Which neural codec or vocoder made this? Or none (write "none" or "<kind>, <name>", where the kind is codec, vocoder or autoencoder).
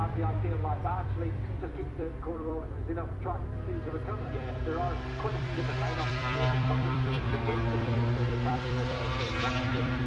vocoder, BigVGAN v2